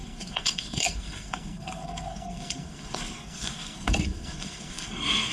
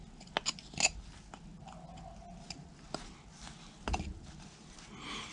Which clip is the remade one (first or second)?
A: first